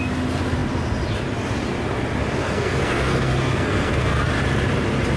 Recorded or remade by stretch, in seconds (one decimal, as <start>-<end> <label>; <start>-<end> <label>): 0.0-2.4 recorded; 2.4-4.3 remade; 4.3-5.2 recorded